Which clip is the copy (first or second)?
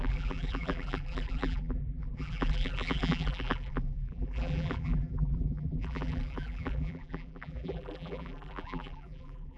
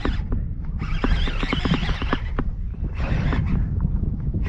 first